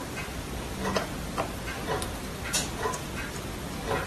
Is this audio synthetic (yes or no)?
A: no